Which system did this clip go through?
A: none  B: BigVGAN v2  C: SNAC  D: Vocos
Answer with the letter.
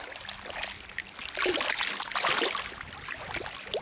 A